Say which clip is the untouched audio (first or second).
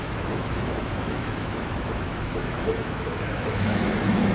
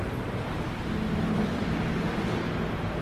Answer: second